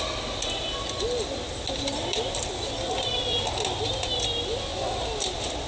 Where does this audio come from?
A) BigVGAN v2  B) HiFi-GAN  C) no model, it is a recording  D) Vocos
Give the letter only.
C